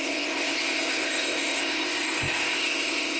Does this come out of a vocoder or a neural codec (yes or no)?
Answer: yes